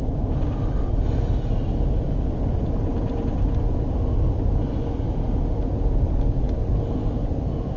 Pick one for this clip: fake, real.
real